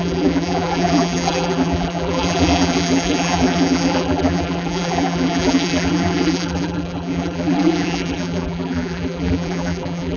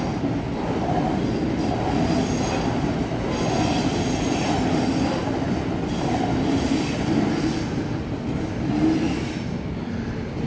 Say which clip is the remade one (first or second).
first